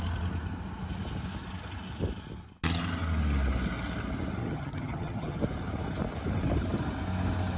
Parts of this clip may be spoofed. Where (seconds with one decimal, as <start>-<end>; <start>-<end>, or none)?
4.4-5.4